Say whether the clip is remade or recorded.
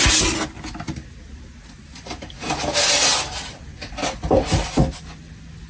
recorded